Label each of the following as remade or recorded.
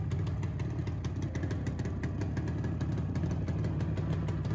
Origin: recorded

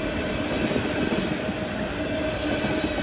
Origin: recorded